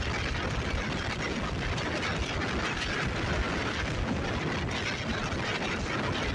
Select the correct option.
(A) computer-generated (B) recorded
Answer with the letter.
B